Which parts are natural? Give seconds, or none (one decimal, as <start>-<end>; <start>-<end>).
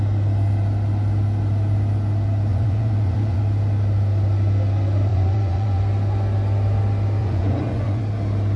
0.0-2.5; 3.4-5.1; 5.8-7.2; 8.0-8.6